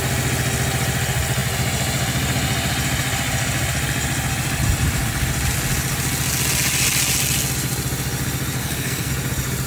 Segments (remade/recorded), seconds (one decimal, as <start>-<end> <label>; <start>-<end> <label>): 0.0-8.6 recorded; 8.6-9.1 remade; 9.1-9.7 recorded